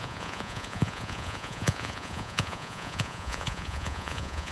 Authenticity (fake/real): fake